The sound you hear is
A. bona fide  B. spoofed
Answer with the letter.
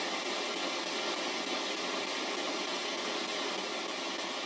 A